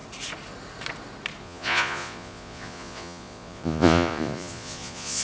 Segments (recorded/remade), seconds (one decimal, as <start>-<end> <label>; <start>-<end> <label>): 0.0-1.4 recorded; 1.4-5.2 remade